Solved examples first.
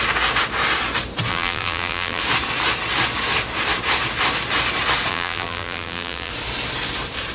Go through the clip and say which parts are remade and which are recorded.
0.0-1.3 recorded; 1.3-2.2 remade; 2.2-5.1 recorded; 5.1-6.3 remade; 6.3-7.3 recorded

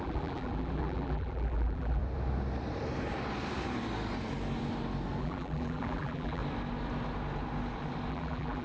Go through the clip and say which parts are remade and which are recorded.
0.0-2.0 remade; 2.0-5.2 recorded; 5.2-6.4 remade; 6.4-8.1 recorded; 8.1-8.6 remade

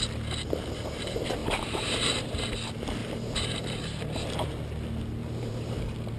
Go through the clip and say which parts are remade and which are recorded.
0.0-1.4 recorded; 1.4-2.5 remade; 2.5-3.0 recorded; 3.0-4.5 remade; 4.5-5.2 recorded; 5.2-5.8 remade; 5.8-6.2 recorded

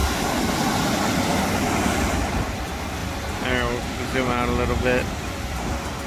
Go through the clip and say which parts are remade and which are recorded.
0.0-6.1 recorded

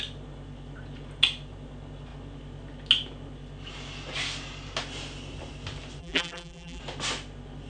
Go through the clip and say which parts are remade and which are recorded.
0.0-6.0 recorded; 6.0-6.8 remade; 6.8-7.7 recorded

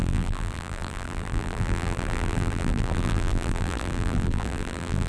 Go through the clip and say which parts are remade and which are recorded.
0.0-5.1 remade

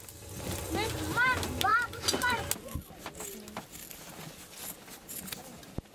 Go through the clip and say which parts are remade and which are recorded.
0.0-5.9 recorded

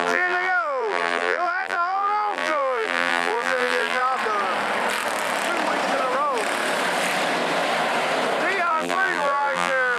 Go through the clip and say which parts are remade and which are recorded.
0.0-4.0 remade; 4.0-8.7 recorded; 8.7-10.0 remade